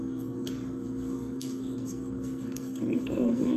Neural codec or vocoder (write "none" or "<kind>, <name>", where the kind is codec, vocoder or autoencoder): codec, SNAC